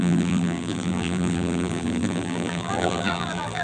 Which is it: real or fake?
fake